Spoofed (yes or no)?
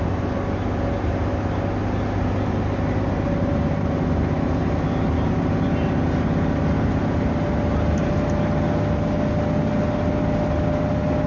no